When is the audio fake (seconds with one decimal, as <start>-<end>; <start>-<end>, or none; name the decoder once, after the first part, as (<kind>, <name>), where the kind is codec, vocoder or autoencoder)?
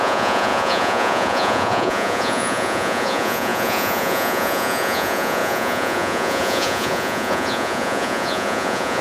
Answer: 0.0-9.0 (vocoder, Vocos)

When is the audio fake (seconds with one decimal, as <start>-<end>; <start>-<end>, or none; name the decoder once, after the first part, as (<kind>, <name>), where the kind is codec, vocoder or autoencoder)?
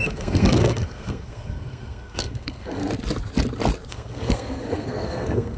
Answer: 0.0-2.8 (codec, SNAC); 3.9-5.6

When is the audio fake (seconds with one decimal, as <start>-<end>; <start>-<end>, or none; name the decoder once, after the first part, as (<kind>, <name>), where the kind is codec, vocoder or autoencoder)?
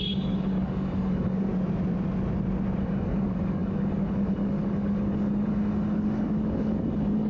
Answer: 0.0-1.5 (codec, DAC); 2.8-7.3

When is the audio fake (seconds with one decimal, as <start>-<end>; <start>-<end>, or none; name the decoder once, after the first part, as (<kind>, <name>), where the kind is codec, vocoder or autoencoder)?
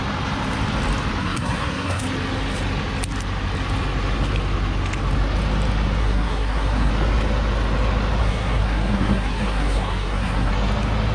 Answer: 1.2-2.0 (codec, SNAC); 6.0-6.9; 8.2-10.5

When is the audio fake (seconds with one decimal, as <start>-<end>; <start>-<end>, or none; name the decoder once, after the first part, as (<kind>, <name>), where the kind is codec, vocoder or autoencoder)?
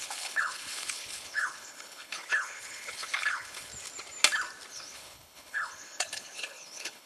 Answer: 0.0-3.7 (codec, HILCodec); 4.7-7.1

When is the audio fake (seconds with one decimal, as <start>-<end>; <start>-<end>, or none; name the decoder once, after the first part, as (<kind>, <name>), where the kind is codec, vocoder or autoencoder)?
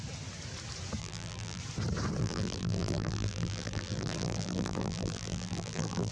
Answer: 1.0-1.6 (vocoder, BigVGAN v2); 2.2-6.1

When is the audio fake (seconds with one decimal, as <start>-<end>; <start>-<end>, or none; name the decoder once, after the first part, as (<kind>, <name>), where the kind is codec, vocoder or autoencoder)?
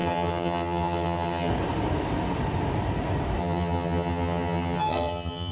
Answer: 0.0-1.5 (vocoder, HiFi-GAN); 3.4-5.5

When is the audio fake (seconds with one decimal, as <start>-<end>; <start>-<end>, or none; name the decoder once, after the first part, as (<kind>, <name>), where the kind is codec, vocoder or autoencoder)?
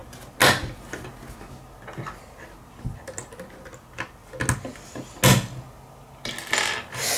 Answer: none